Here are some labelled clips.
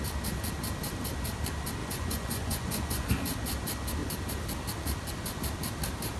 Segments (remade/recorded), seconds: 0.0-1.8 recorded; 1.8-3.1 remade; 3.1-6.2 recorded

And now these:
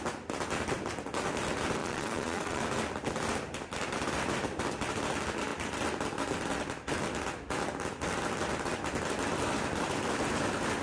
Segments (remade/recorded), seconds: 0.0-1.8 recorded; 1.8-2.6 remade; 2.6-10.8 recorded

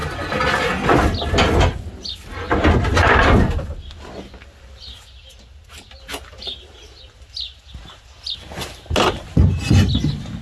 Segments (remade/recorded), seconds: 0.0-10.4 recorded

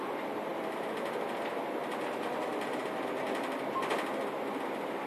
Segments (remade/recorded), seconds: 0.0-5.1 recorded

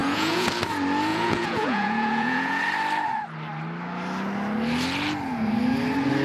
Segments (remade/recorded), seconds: 0.0-0.5 remade; 0.5-1.1 recorded; 1.1-2.6 remade; 2.6-6.2 recorded